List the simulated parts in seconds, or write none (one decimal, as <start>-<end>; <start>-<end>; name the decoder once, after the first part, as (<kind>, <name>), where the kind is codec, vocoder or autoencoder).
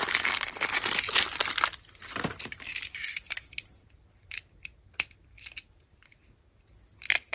none